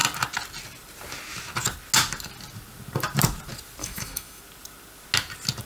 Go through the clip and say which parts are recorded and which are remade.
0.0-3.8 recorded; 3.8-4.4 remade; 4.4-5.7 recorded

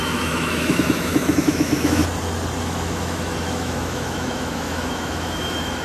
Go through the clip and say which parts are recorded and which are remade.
0.0-2.0 remade; 2.0-2.6 recorded; 2.6-5.8 remade

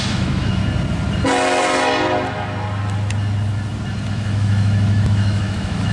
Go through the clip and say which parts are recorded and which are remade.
0.0-0.6 remade; 0.6-4.1 recorded; 4.1-5.9 remade

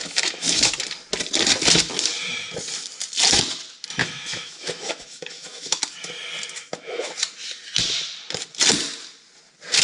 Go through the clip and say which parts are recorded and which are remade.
0.0-0.7 remade; 0.7-4.0 recorded; 4.0-5.8 remade; 5.8-6.6 recorded; 6.6-7.1 remade; 7.1-9.8 recorded

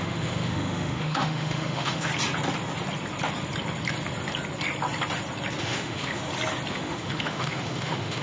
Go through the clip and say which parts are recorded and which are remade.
0.0-2.1 remade; 2.1-5.6 recorded; 5.6-6.2 remade; 6.2-6.7 recorded; 6.7-8.2 remade

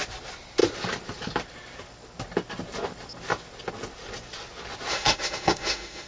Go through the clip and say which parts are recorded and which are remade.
0.0-4.9 recorded; 4.9-6.1 remade